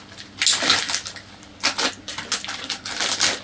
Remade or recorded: recorded